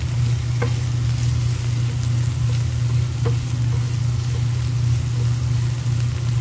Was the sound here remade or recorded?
recorded